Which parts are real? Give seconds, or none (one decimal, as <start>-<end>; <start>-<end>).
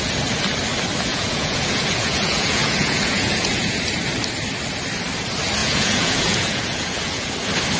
0.0-1.1; 3.8-5.6; 7.3-7.8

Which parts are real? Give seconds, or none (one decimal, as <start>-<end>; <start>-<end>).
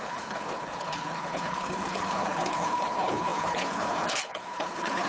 none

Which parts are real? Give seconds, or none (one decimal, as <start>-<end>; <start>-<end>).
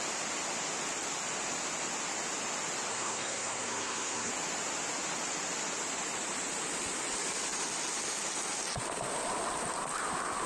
0.0-2.9; 4.3-10.5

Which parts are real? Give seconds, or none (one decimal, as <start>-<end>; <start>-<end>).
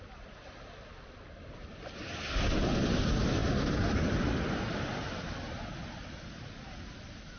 0.0-7.4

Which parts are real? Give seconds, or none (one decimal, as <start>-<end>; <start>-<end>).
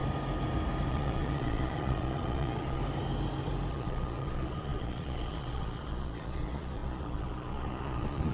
0.0-0.9; 2.8-3.7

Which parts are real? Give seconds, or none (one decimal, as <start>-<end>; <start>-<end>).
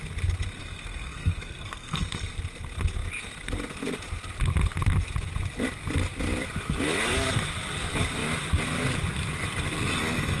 0.0-0.6; 2.0-10.4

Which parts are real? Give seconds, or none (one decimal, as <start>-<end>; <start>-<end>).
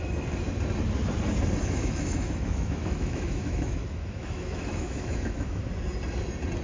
0.0-1.6; 5.6-6.6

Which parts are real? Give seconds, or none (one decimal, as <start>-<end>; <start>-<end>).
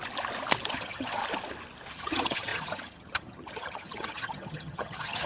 0.0-0.7; 1.2-1.9